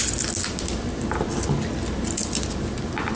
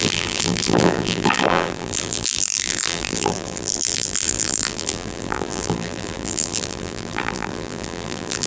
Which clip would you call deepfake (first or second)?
second